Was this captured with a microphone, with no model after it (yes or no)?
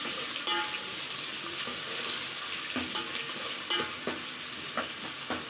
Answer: yes